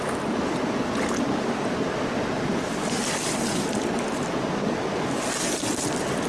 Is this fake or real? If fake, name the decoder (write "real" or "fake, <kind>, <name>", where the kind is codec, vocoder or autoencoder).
real